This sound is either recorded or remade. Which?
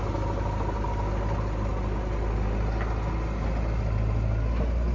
recorded